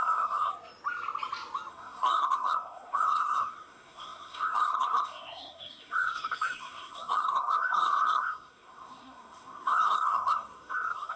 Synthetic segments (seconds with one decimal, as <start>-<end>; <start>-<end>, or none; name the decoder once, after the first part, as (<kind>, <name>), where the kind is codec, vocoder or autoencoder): 0.0-0.5 (codec, SNAC); 1.7-11.2